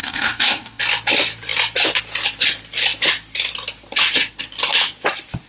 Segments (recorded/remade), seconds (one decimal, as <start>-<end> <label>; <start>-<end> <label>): 0.0-0.8 remade; 0.8-5.5 recorded

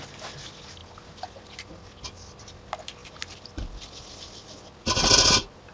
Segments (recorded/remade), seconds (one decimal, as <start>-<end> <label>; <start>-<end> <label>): 0.0-5.7 recorded

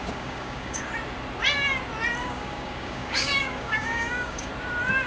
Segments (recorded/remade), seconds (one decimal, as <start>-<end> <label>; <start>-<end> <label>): 0.0-0.8 remade; 0.8-2.2 recorded; 2.2-4.5 remade; 4.5-5.1 recorded

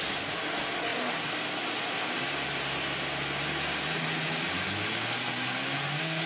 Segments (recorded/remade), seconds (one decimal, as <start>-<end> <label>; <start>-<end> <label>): 0.0-6.3 recorded

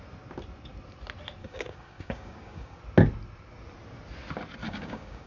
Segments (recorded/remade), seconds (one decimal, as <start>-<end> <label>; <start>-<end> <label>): 0.0-1.4 recorded; 1.4-2.8 remade; 2.8-4.6 recorded; 4.6-5.3 remade

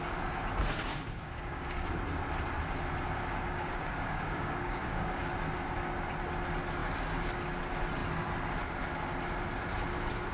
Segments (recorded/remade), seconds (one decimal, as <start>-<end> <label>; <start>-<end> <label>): 0.0-0.9 recorded; 0.9-1.9 remade; 1.9-3.2 recorded; 3.2-5.3 remade; 5.3-10.3 recorded

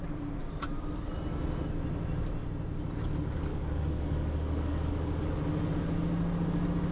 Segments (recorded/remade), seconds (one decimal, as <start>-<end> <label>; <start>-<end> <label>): 0.0-3.5 recorded; 3.5-5.4 remade; 5.4-6.9 recorded

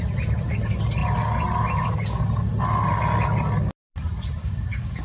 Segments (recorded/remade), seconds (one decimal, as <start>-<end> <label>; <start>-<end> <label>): 0.0-4.4 recorded; 4.4-5.0 remade